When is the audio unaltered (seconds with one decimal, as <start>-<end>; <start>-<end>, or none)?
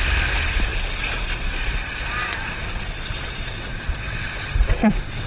0.0-2.3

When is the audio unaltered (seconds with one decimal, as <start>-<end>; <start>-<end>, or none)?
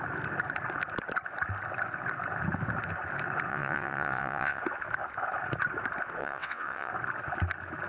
0.0-3.5; 4.6-6.2; 6.9-7.9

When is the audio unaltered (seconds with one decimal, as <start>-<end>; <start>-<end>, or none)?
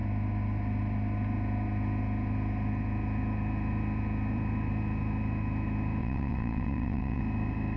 0.0-6.0; 7.2-7.8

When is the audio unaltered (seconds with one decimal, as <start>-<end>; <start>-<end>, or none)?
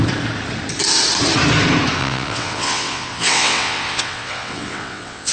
0.0-2.0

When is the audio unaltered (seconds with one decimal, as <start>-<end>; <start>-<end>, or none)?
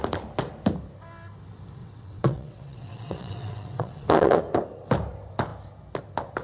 0.0-1.8; 4.4-6.4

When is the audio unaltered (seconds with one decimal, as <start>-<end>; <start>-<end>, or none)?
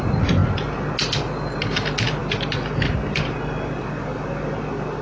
0.0-5.0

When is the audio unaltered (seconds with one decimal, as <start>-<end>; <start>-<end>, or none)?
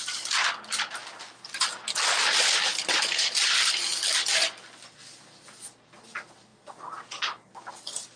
0.0-8.2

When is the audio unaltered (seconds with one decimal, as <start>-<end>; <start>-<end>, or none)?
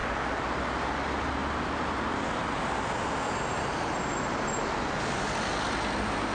0.0-6.3